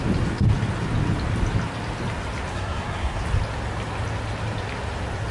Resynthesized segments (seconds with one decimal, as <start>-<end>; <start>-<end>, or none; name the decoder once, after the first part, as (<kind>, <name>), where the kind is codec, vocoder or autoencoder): 2.5-3.2 (codec, SNAC)